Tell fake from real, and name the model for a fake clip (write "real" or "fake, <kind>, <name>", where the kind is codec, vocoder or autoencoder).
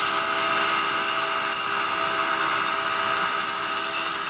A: real